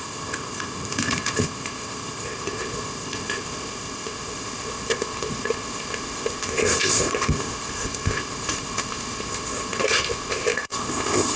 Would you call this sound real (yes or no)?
no